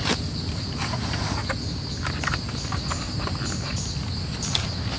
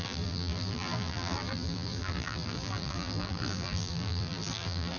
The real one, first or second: first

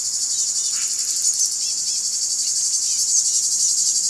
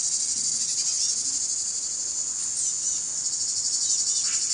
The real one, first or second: second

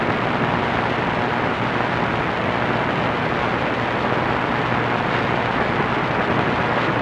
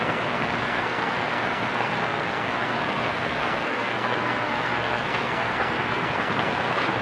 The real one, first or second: first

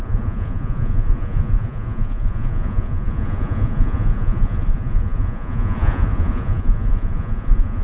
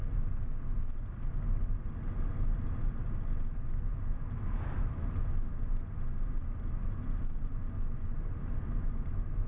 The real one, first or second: second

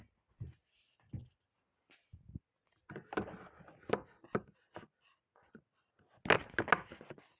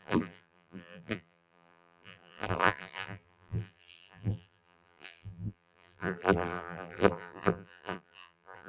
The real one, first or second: first